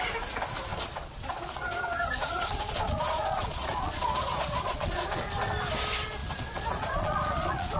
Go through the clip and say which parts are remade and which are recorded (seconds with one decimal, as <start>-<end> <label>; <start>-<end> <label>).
0.0-0.7 recorded; 0.7-5.3 remade; 5.3-6.2 recorded; 6.2-7.8 remade